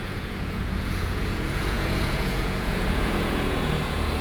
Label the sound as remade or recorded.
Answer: remade